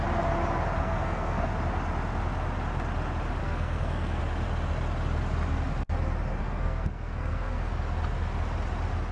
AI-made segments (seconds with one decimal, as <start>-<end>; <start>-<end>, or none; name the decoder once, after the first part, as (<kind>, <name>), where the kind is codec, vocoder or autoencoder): 0.8-1.5 (codec, SNAC); 3.4-4.2; 6.4-7.7